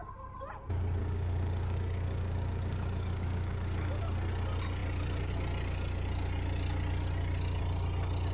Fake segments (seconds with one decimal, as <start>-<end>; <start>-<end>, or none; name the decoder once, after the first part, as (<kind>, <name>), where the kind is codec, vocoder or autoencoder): 1.0-4.0 (codec, DAC)